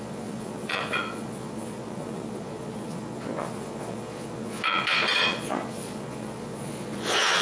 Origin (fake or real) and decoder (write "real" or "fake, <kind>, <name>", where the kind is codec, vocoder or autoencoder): fake, vocoder, Vocos